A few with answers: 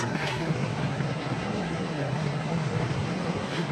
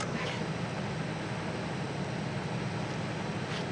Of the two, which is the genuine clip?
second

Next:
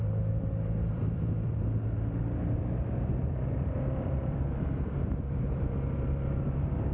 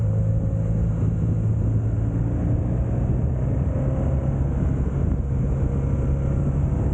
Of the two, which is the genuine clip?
second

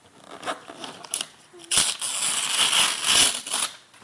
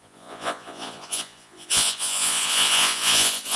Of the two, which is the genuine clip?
first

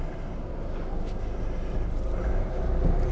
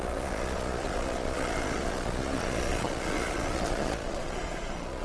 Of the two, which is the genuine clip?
first